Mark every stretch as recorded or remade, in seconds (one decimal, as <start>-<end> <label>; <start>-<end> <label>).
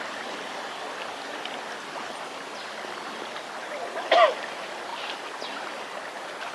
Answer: 0.0-6.5 recorded